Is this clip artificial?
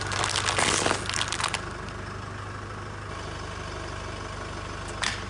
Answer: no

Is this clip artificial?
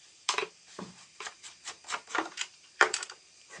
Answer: yes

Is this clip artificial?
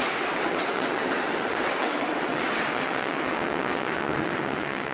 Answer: yes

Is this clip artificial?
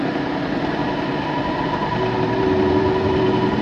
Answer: yes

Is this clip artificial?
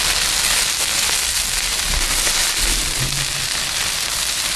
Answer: no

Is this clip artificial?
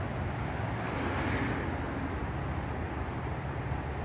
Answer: no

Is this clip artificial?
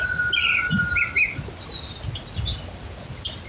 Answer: no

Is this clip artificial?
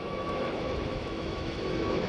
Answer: yes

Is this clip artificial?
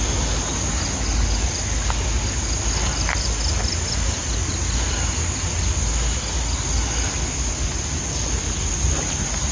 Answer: no